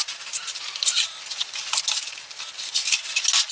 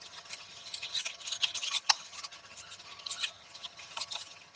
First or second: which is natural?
first